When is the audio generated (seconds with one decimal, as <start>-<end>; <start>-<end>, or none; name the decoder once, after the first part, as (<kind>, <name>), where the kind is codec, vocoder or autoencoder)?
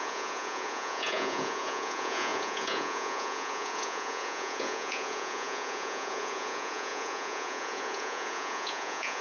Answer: 0.0-9.2 (vocoder, Vocos)